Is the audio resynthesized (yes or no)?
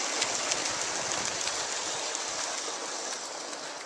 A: no